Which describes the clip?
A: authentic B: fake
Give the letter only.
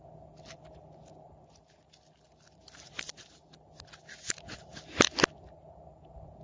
A